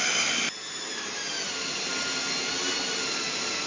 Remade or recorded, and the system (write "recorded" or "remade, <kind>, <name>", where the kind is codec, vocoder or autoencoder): recorded